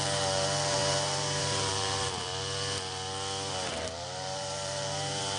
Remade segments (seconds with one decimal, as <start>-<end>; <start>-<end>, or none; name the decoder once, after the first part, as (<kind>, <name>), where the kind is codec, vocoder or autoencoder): 0.0-2.3 (vocoder, BigVGAN v2); 3.5-5.4